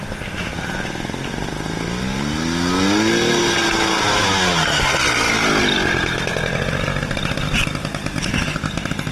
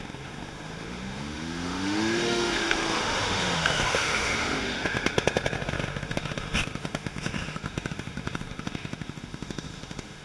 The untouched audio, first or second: first